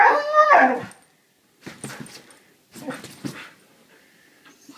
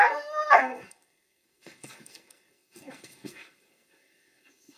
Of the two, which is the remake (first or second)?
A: second